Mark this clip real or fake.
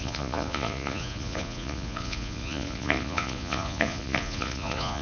fake